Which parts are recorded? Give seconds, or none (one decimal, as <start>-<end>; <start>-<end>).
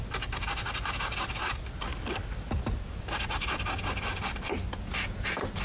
0.0-5.6